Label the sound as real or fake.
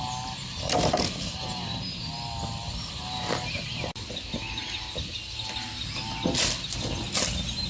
real